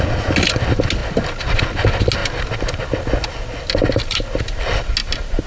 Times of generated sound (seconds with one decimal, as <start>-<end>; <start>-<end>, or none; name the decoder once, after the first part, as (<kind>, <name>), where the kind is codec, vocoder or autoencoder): none